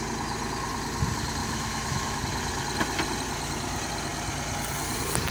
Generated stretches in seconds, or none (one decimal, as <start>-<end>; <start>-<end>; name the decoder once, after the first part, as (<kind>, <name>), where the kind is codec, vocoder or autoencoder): 1.4-2.2 (autoencoder, DAC-VAE)